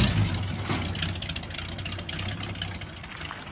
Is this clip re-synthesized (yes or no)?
no